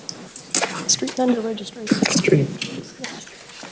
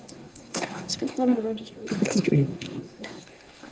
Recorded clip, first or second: first